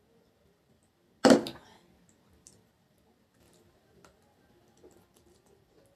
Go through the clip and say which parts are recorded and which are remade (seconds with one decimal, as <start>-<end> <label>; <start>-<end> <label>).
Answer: 0.0-6.0 recorded